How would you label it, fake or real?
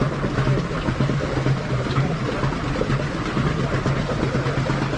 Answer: real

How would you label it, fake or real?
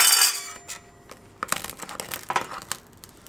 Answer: real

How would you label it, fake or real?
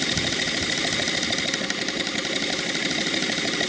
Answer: real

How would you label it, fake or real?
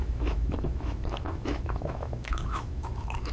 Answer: fake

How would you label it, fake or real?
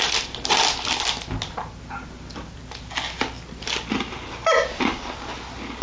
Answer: real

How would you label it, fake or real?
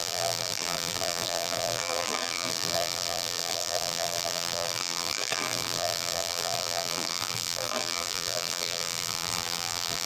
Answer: fake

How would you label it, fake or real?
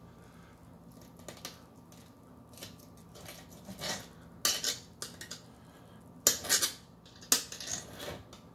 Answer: real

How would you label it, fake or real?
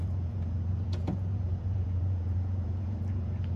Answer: fake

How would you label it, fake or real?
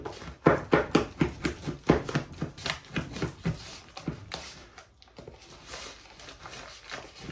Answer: real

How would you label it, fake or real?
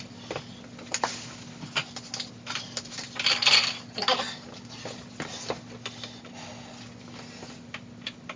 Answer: real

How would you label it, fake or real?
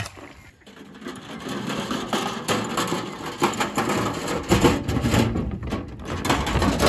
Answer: real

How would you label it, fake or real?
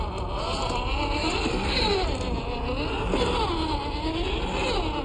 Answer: real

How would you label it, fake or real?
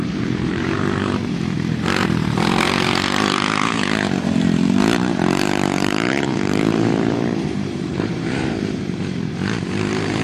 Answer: fake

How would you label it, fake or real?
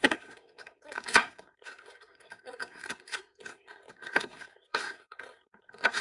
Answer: fake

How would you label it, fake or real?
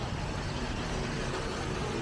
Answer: real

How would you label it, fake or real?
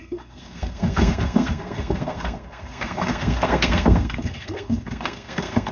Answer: fake